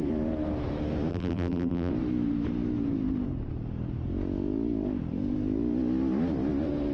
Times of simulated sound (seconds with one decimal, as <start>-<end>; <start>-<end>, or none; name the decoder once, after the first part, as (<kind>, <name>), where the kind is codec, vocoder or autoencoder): 1.1-1.9 (vocoder, BigVGAN v2)